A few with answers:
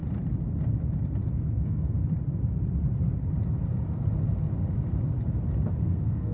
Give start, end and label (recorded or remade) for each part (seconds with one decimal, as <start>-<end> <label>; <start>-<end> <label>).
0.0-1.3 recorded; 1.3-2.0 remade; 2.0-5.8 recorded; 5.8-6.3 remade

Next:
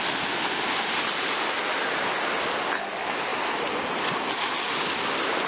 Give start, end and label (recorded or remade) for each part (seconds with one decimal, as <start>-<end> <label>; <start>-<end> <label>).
0.0-5.5 recorded

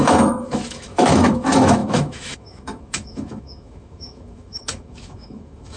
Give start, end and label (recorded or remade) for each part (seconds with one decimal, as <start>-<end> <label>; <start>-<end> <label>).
0.0-5.8 remade

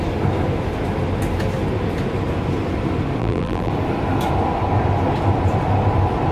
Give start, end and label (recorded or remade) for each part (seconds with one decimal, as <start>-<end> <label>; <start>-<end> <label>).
0.0-3.2 recorded; 3.2-3.7 remade; 3.7-6.3 recorded

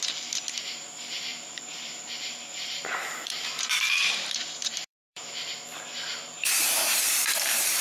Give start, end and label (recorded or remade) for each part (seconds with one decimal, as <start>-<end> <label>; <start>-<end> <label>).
0.0-1.3 recorded; 1.3-5.5 remade; 5.5-6.1 recorded; 6.1-7.8 remade

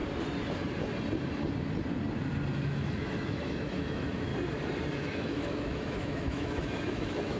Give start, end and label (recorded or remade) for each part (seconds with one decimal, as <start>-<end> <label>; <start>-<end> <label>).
0.0-2.5 recorded; 2.5-4.3 remade; 4.3-5.0 recorded; 5.0-7.4 remade

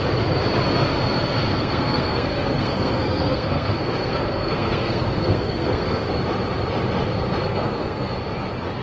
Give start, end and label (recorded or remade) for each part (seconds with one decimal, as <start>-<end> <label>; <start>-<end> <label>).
0.0-1.5 recorded; 1.5-6.1 remade; 6.1-7.4 recorded; 7.4-8.1 remade; 8.1-8.8 recorded

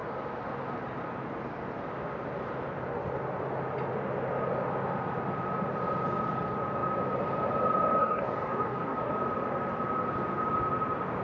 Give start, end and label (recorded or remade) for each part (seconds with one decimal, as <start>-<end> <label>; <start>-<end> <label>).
0.0-8.0 recorded; 8.0-9.1 remade; 9.1-11.2 recorded